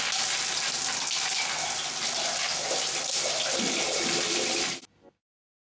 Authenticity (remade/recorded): recorded